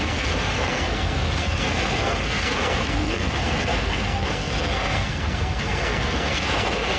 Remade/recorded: remade